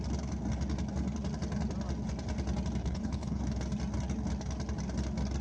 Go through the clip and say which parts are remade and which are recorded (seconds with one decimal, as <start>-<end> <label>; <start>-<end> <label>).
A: 0.0-2.8 recorded; 2.8-3.4 remade; 3.4-5.4 recorded